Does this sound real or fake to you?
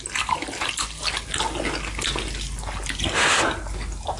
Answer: real